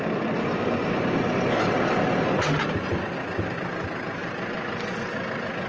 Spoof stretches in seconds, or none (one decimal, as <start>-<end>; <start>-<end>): none